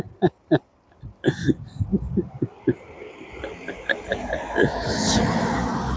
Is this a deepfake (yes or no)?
no